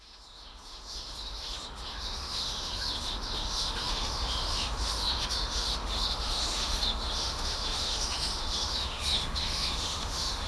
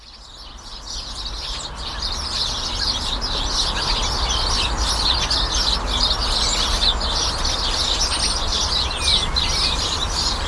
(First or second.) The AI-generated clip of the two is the first